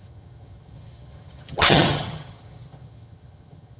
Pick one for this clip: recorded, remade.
remade